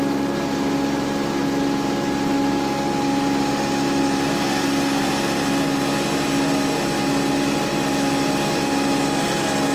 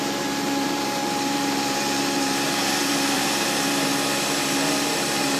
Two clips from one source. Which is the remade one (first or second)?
second